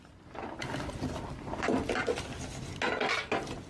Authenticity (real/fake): real